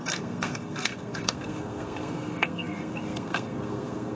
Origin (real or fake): fake